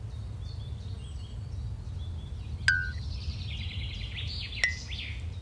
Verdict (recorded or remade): recorded